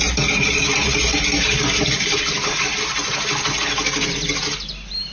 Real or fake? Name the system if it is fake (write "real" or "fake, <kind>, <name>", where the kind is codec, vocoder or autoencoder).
real